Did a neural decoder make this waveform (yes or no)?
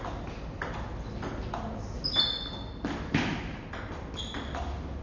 no